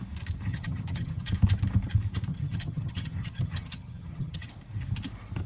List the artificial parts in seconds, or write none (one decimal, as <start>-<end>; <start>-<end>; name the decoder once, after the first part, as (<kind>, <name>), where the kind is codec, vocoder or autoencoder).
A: 0.5-1.3 (vocoder, HiFi-GAN); 2.3-4.5